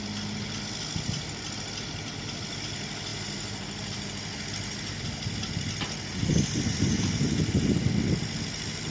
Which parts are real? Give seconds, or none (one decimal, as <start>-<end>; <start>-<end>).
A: 0.0-8.9